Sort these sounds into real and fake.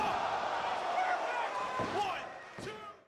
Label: fake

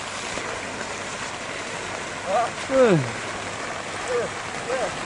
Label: real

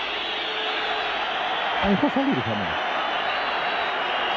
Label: real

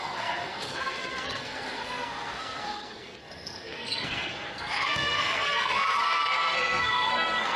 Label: fake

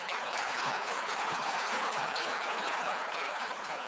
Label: fake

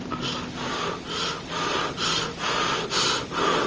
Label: real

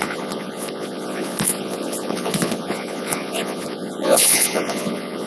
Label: fake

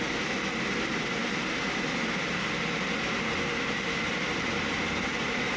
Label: real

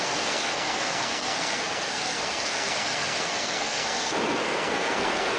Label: fake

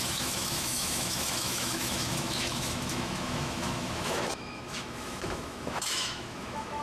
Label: fake